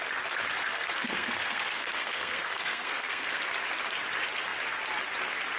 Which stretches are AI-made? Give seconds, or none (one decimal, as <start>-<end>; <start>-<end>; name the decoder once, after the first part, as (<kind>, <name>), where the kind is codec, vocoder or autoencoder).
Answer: 0.6-3.4 (codec, SNAC)